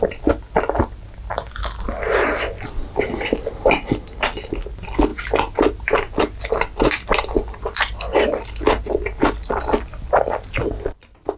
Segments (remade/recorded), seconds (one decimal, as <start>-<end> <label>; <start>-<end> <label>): 0.0-11.4 recorded